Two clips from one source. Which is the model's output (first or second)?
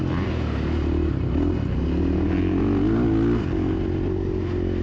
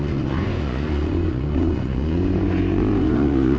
second